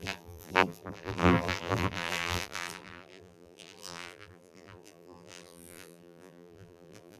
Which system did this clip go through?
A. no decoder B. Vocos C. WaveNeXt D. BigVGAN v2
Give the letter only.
D